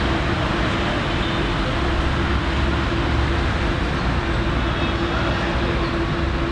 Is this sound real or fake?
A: real